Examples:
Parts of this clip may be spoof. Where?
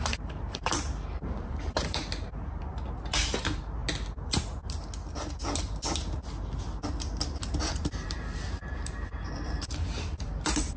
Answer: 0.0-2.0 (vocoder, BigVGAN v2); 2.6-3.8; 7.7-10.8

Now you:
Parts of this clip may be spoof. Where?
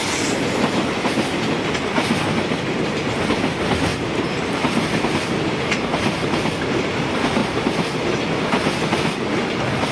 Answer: 3.9-5.1 (vocoder, BigVGAN v2); 7.4-8.2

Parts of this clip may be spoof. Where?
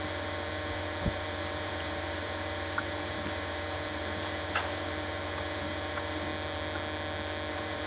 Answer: 0.0-6.3 (vocoder, BigVGAN v2); 7.5-7.9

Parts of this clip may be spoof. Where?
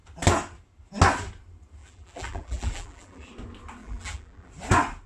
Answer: 1.8-3.3 (vocoder, BigVGAN v2); 3.8-4.5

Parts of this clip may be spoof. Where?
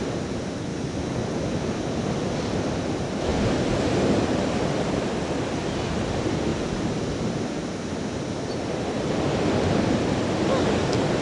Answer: 0.0-0.7 (vocoder, BigVGAN v2); 2.8-6.5; 8.5-11.2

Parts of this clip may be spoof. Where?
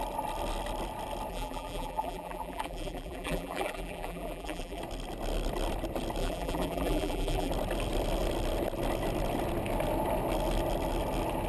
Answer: 1.3-4.8 (vocoder, BigVGAN v2); 6.2-7.5